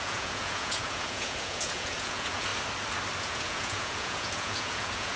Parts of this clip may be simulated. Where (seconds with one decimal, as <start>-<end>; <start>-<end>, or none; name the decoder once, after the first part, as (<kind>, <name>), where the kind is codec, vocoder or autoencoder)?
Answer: 0.0-2.5 (vocoder, Vocos); 3.2-5.2